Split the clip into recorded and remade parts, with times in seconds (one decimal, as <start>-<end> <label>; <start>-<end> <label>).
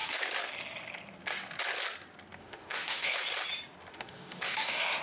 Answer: 0.0-2.4 recorded; 2.4-3.2 remade; 3.2-3.9 recorded; 3.9-5.0 remade